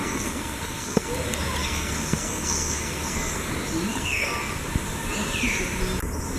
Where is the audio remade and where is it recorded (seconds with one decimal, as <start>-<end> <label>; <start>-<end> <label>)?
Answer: 0.0-1.1 remade; 1.1-1.6 recorded; 1.6-3.5 remade; 3.5-3.9 recorded; 3.9-4.5 remade; 4.5-6.4 recorded